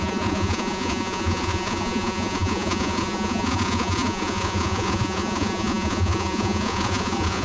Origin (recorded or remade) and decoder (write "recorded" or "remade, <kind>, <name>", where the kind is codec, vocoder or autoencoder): remade, vocoder, Vocos